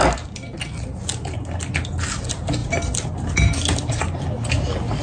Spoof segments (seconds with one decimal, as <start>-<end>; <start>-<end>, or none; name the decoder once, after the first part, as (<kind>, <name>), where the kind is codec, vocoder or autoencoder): none